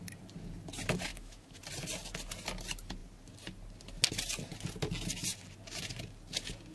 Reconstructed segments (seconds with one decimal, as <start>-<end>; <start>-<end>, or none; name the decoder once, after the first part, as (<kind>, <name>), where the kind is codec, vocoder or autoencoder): 1.1-1.6 (autoencoder, DAC-VAE)